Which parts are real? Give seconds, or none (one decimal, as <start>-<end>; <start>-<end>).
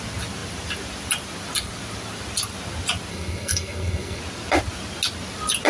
0.0-3.1; 4.2-5.7